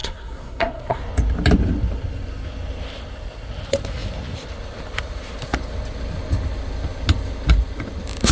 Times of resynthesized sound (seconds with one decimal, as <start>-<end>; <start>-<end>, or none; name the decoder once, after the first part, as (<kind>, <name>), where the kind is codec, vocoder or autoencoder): 0.0-1.0 (codec, SNAC)